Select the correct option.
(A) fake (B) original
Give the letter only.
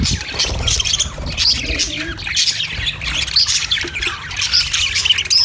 B